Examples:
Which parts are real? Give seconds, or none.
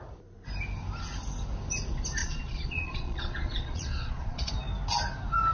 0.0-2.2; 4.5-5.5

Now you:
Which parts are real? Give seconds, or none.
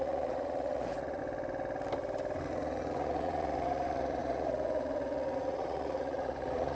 1.2-2.5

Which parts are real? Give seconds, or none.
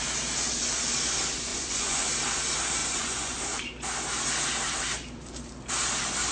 0.0-1.5; 2.1-2.8; 3.4-6.3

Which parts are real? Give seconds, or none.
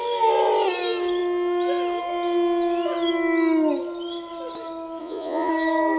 0.0-5.0; 5.5-6.0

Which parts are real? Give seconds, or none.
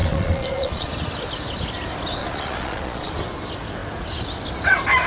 0.9-2.2; 3.1-5.1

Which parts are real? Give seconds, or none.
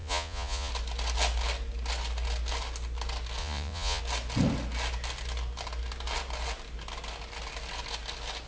0.7-3.4; 4.0-8.5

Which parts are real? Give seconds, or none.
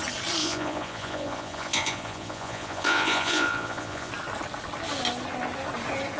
0.0-0.4; 4.1-6.2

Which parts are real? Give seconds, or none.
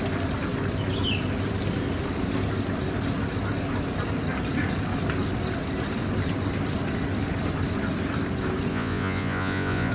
0.0-8.7